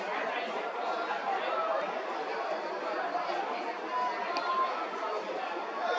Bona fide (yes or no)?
yes